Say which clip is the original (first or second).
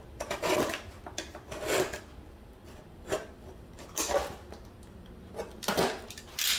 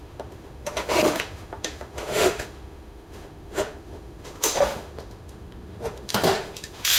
first